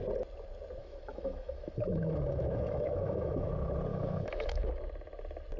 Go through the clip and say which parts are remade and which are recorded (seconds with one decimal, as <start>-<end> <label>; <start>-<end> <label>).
0.0-0.8 recorded; 0.8-3.5 remade; 3.5-3.9 recorded; 3.9-4.7 remade; 4.7-5.6 recorded